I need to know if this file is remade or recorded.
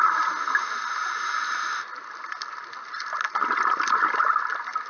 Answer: recorded